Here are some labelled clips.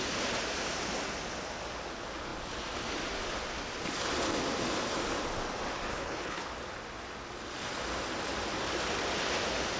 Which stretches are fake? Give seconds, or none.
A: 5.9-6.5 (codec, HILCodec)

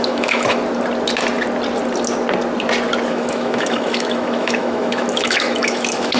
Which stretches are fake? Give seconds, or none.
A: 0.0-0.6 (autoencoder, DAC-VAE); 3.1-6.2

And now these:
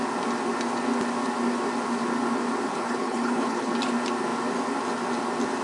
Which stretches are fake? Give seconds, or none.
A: 2.7-3.7 (codec, HILCodec)